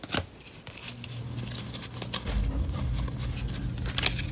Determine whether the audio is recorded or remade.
recorded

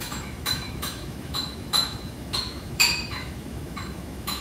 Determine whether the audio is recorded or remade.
remade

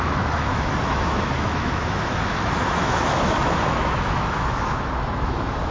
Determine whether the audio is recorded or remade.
remade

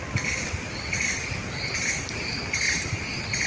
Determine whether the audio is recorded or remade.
recorded